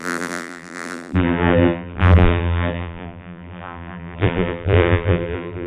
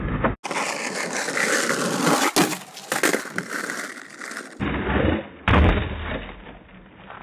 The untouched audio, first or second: second